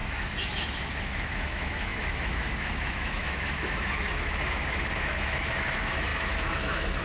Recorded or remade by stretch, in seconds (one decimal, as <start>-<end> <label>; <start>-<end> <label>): 0.0-7.0 remade